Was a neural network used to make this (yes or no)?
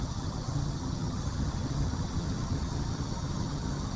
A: yes